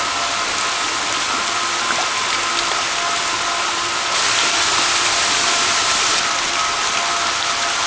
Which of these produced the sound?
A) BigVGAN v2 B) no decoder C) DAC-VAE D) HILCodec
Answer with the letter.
B